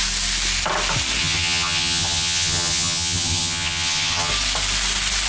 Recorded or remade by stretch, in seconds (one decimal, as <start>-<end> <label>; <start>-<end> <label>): 0.0-1.2 recorded; 1.2-4.3 remade; 4.3-5.3 recorded